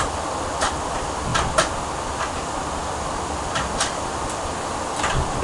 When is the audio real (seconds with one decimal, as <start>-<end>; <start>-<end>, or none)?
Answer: 1.3-3.0